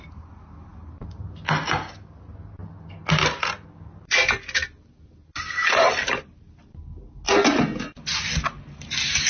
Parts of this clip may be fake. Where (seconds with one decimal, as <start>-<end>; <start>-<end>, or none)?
none

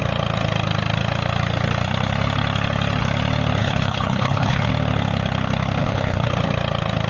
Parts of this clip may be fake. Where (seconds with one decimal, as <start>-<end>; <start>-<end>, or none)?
3.6-4.7; 5.8-6.3

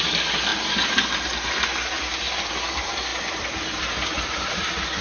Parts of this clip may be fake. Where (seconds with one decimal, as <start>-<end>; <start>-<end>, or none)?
0.0-0.5; 2.5-5.0

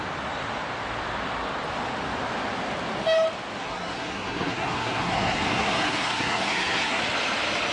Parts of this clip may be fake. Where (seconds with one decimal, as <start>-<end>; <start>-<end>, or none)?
3.6-7.0

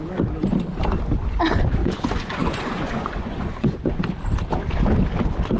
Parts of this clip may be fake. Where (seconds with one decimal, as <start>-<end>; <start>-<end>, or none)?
1.8-4.0

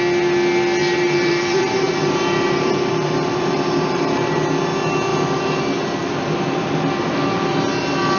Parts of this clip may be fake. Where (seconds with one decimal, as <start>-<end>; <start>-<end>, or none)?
0.8-4.5; 5.1-5.6; 6.0-7.1

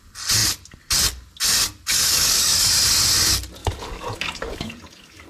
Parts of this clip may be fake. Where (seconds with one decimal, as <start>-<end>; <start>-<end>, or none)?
1.9-2.7; 3.6-5.3